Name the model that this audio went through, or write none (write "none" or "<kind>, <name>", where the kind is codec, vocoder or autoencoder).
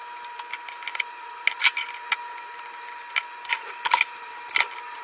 none